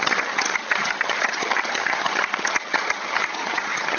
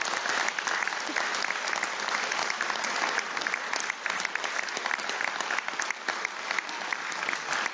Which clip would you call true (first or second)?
second